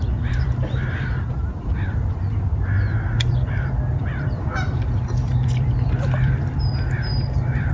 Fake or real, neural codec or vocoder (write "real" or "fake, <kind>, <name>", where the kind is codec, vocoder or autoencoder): fake, vocoder, BigVGAN v2